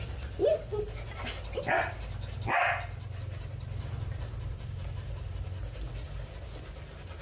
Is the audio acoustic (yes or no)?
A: yes